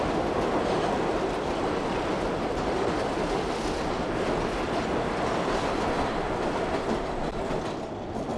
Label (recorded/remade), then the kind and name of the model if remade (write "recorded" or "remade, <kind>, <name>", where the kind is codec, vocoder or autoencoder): recorded